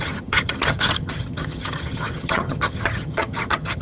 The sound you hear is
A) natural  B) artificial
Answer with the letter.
B